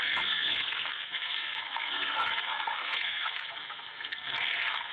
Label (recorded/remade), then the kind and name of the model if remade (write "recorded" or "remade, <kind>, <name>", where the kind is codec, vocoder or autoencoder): remade, codec, SNAC